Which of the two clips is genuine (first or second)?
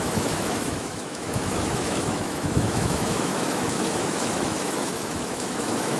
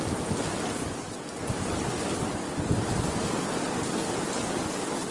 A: second